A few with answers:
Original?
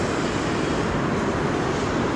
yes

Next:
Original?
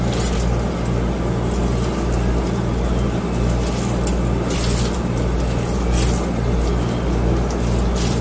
yes